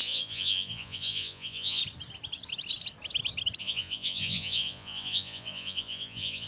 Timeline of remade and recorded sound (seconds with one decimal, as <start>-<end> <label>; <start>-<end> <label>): 0.0-1.8 remade; 1.8-3.6 recorded; 3.6-6.5 remade